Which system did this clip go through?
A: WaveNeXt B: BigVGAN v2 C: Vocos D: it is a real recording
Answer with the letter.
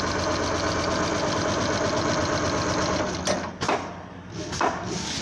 D